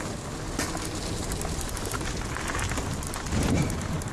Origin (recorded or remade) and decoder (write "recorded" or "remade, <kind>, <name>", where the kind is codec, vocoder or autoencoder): recorded